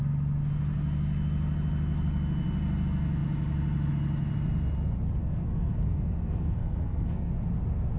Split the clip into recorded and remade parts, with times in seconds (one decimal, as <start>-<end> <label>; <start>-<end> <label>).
0.0-5.2 recorded; 5.2-7.3 remade; 7.3-8.0 recorded